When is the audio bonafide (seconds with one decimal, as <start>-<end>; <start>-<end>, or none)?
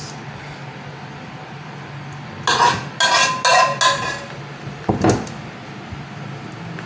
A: 0.0-6.9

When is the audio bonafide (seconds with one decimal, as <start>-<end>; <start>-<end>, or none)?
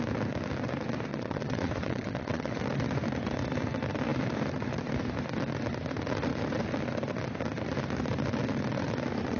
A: 0.0-1.1; 2.6-9.4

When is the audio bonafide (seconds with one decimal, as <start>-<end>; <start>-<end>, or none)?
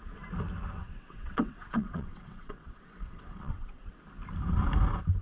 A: 0.0-0.8; 3.9-5.2